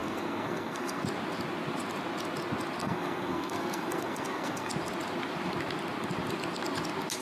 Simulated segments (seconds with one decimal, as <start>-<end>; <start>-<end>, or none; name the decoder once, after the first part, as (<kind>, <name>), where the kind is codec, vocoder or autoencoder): 0.0-1.0 (codec, SNAC); 2.8-4.7